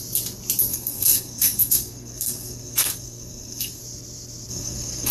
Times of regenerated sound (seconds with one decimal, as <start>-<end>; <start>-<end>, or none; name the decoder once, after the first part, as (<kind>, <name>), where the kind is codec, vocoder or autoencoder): 0.7-3.8 (codec, SNAC); 4.5-5.1